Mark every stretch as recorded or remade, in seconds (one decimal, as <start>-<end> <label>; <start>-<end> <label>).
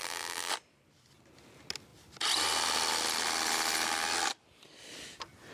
0.0-0.5 remade; 0.5-5.5 recorded